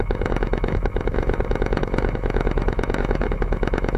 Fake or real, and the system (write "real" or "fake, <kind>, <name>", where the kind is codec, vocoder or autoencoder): fake, autoencoder, DAC-VAE